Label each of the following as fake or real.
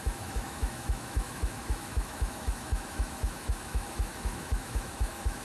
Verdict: fake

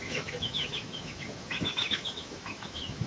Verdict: fake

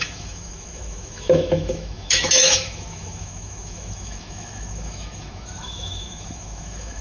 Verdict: fake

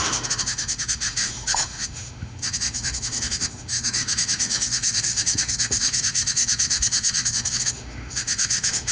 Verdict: fake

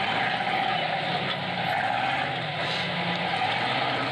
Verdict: real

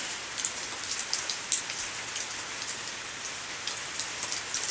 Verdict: real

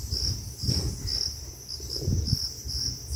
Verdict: real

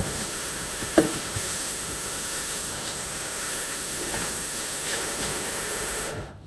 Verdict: fake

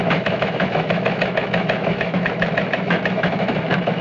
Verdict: fake